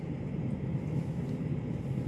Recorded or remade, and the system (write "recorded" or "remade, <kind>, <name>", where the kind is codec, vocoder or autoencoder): recorded